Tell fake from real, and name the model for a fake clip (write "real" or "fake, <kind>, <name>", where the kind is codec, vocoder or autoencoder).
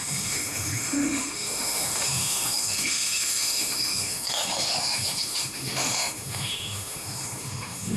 fake, autoencoder, DAC-VAE